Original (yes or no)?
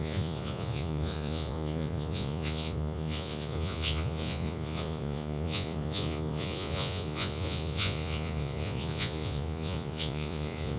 no